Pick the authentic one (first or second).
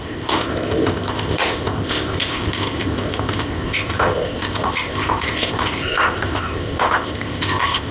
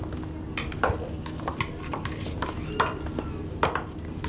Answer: second